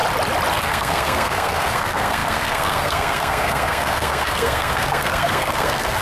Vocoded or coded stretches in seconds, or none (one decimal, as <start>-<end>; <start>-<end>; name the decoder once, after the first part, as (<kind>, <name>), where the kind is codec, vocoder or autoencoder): 0.5-6.0 (codec, SNAC)